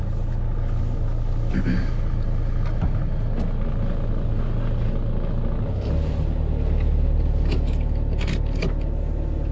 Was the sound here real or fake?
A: real